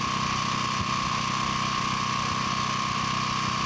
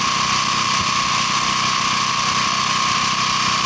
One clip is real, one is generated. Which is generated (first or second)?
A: second